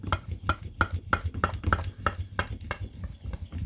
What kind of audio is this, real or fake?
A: real